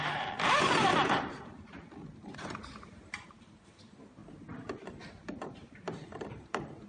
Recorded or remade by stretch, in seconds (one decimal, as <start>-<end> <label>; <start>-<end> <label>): 0.0-4.2 remade; 4.2-5.1 recorded; 5.1-6.9 remade